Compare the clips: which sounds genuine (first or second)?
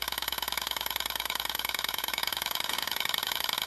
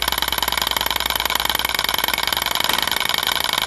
second